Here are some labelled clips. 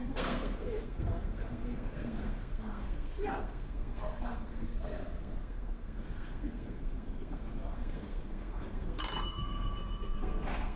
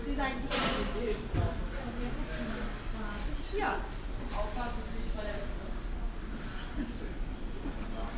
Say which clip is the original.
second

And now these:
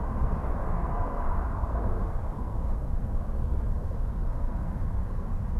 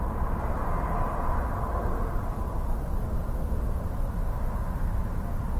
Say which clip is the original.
second